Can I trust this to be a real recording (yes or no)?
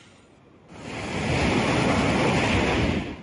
yes